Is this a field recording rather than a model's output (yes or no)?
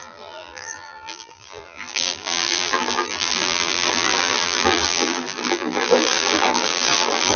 no